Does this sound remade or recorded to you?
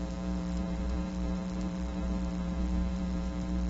remade